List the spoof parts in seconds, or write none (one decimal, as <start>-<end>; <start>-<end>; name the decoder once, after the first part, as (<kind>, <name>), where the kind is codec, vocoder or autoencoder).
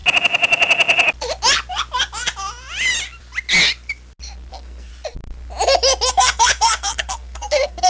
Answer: 4.5-4.9 (codec, SNAC); 6.1-7.9